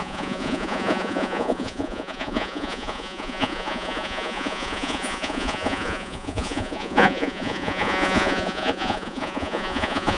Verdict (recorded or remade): remade